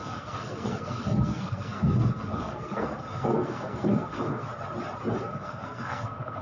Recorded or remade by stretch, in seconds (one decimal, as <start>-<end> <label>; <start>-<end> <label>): 0.0-4.5 remade; 4.5-5.2 recorded; 5.2-6.4 remade